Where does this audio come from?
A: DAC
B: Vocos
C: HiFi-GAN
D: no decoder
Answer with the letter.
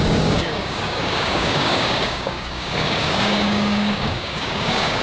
A